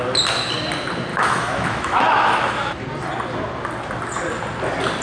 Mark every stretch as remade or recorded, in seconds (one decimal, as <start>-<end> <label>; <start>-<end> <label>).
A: 0.0-1.1 recorded; 1.1-2.8 remade; 2.8-5.0 recorded